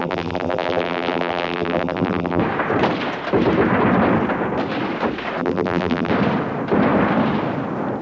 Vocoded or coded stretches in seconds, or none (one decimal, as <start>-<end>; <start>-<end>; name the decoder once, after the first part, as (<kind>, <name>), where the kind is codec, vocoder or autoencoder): 0.0-2.4 (vocoder, BigVGAN v2); 5.4-6.1

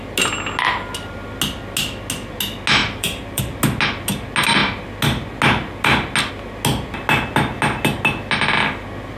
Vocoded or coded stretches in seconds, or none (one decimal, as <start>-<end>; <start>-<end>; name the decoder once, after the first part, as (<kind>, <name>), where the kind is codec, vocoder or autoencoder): 2.8-3.4 (vocoder, BigVGAN v2)

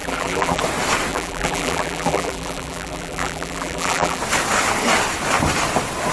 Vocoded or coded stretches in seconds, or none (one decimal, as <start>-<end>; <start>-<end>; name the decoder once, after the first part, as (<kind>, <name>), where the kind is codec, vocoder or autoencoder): 0.0-0.6 (vocoder, BigVGAN v2); 1.1-4.2

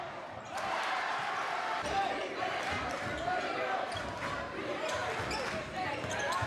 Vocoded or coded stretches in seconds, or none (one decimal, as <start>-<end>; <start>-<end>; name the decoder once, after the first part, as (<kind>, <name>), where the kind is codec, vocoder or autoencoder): 0.0-5.0 (vocoder, BigVGAN v2); 5.6-6.5

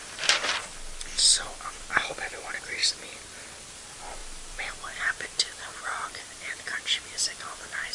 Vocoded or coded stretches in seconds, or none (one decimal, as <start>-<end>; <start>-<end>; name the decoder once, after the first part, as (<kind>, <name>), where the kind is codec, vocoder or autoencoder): 0.0-0.7 (vocoder, BigVGAN v2); 1.6-2.8; 3.6-7.9